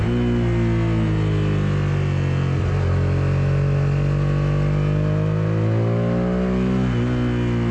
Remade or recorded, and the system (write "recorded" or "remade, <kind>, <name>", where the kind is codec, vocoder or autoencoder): recorded